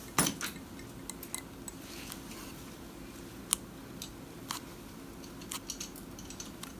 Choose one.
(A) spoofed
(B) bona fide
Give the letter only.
B